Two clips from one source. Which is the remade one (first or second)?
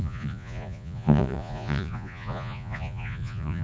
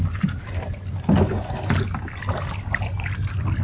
first